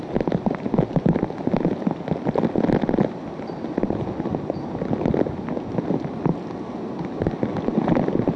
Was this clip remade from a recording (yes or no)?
no